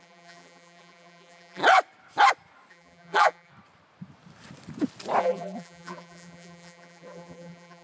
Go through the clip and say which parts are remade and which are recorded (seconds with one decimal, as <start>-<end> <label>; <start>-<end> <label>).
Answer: 0.0-1.6 remade; 1.6-2.7 recorded; 2.7-3.5 remade; 3.5-5.2 recorded; 5.2-7.8 remade